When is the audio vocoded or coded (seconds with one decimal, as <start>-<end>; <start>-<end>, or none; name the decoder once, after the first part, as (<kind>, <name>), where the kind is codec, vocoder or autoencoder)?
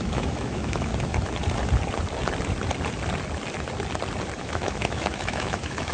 0.0-0.9 (autoencoder, DAC-VAE); 4.4-5.9